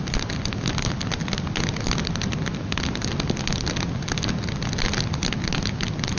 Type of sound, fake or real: real